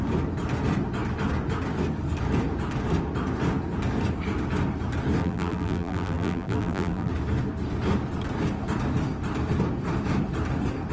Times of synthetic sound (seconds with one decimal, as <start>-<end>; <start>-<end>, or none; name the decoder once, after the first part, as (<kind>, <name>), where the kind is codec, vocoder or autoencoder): 5.2-7.1 (vocoder, BigVGAN v2)